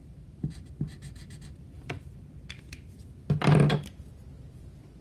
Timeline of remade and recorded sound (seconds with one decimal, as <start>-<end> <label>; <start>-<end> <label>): 0.0-0.7 remade; 0.7-1.2 recorded; 1.2-3.0 remade; 3.0-5.0 recorded